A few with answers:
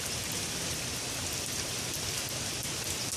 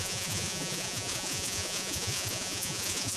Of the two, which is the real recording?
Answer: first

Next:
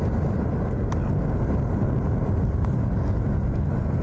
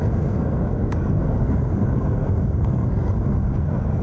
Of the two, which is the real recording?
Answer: first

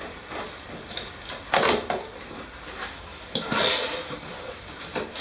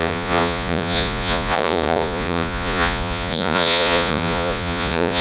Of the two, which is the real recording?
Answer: first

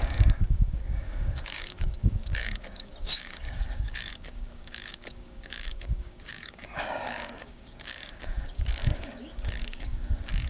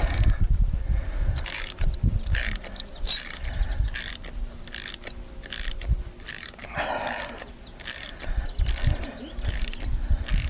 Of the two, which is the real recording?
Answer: second